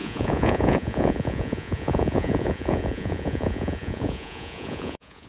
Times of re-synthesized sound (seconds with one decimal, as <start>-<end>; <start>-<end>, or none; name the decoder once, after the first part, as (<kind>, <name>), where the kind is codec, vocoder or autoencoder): 0.0-5.3 (vocoder, Vocos)